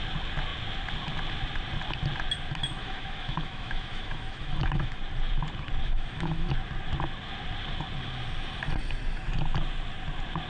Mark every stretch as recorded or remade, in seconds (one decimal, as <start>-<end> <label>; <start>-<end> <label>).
0.0-2.6 recorded; 2.6-5.0 remade; 5.0-5.8 recorded; 5.8-6.5 remade; 6.5-10.5 recorded